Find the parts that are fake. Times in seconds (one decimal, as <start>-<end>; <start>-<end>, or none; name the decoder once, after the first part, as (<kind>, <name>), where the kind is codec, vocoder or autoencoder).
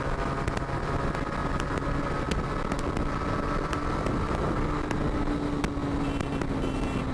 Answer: none